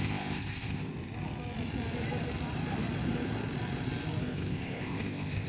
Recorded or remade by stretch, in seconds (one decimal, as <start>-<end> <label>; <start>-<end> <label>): 0.0-0.9 remade; 0.9-4.2 recorded; 4.2-5.5 remade